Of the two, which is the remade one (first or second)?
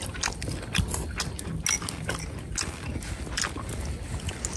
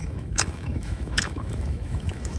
second